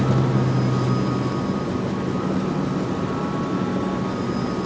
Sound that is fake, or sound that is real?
real